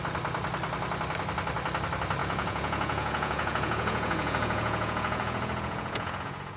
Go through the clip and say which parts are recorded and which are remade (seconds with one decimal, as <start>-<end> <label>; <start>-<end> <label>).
0.0-2.2 recorded; 2.2-6.6 remade